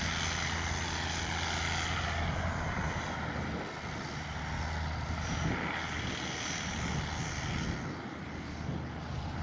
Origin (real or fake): real